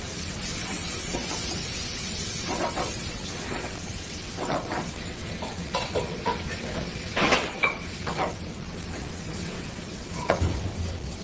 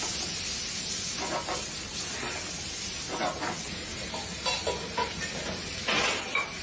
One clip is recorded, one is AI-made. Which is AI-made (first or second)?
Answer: first